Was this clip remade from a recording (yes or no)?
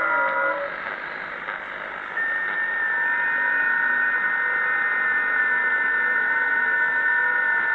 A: no